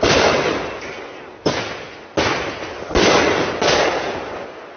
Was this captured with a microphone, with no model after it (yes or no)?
yes